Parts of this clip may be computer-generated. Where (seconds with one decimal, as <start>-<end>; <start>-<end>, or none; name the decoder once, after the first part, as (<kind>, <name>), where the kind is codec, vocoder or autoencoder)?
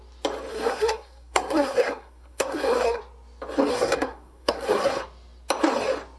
0.5-3.0 (codec, SNAC); 3.7-5.0